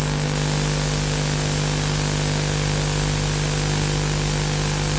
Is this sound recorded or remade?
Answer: recorded